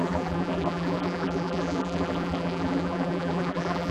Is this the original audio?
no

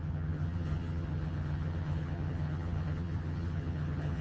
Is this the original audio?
no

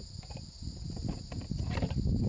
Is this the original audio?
yes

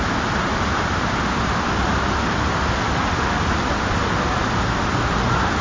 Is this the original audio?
yes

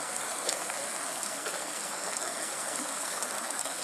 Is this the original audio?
no